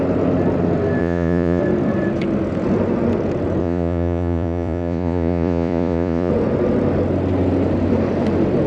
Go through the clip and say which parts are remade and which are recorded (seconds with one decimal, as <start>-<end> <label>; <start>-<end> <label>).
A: 0.0-1.0 recorded; 1.0-1.6 remade; 1.6-3.6 recorded; 3.6-6.3 remade; 6.3-8.7 recorded